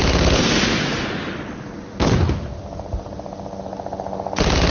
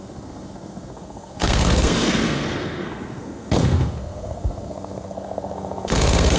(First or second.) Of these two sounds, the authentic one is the first